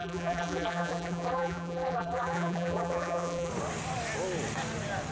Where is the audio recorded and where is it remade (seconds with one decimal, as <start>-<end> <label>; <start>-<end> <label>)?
0.0-3.5 remade; 3.5-5.1 recorded